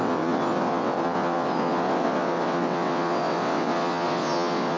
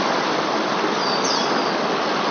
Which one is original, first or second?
second